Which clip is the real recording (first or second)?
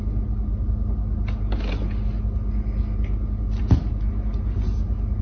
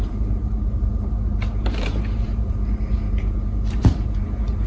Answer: first